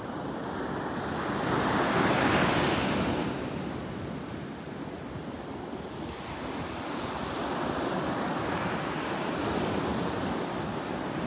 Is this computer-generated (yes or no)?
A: no